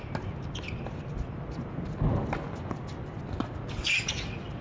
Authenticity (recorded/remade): recorded